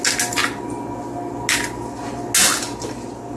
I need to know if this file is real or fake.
real